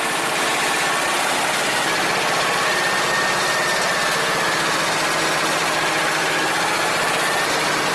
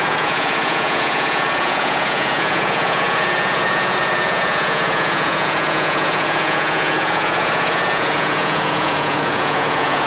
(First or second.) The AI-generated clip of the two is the second